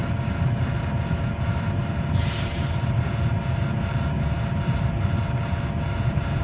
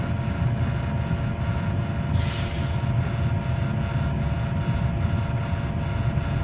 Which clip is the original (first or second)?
second